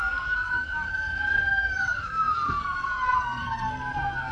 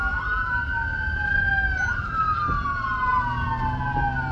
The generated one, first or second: first